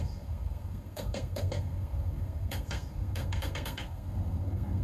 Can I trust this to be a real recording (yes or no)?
no